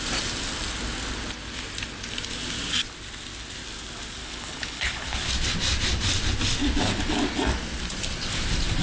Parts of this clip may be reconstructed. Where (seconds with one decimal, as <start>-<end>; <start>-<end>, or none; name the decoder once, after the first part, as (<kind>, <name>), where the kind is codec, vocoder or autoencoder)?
4.2-5.3 (codec, HILCodec)